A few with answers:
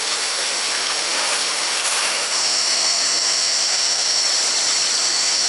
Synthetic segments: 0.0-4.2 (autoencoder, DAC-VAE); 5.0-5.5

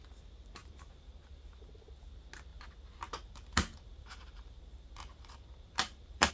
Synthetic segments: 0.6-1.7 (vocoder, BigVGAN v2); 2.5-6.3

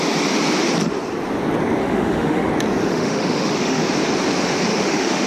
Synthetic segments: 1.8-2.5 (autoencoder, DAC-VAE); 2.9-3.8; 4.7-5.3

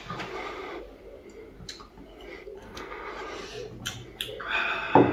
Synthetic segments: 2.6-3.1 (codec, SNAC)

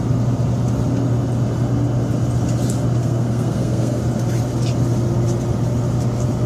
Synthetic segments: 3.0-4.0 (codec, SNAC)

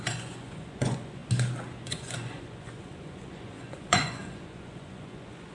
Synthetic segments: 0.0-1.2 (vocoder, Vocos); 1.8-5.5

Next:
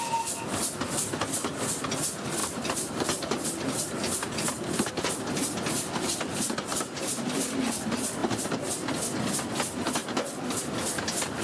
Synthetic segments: 2.4-4.9 (vocoder, BigVGAN v2); 6.7-7.6